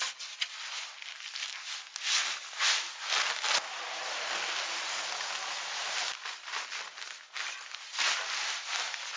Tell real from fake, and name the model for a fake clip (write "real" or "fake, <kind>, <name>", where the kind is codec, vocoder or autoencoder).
real